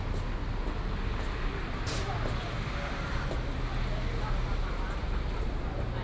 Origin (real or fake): real